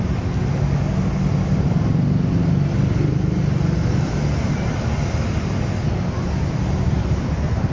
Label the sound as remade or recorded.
recorded